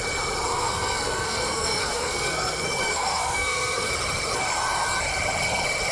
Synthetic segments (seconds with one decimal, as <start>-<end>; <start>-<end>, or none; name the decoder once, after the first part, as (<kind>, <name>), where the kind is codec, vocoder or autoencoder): 0.5-3.9 (codec, SNAC)